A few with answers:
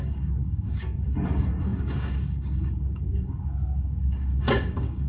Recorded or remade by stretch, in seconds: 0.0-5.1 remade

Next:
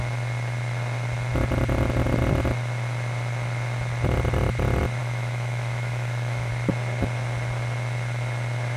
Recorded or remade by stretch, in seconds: 0.0-5.0 recorded; 5.0-6.5 remade; 6.5-8.8 recorded

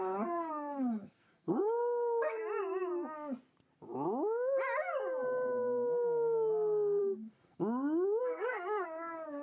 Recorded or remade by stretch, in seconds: 0.0-2.4 remade; 2.4-7.0 recorded; 7.0-7.6 remade; 7.6-8.2 recorded; 8.2-9.4 remade

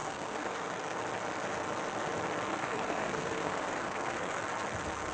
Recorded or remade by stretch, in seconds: 0.0-1.0 remade; 1.0-2.5 recorded; 2.5-4.4 remade; 4.4-5.1 recorded